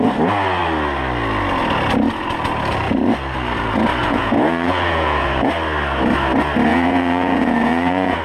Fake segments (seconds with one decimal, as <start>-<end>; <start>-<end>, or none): 4.0-5.5; 6.7-8.2